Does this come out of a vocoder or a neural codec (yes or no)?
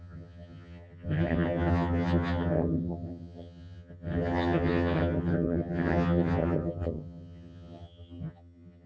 yes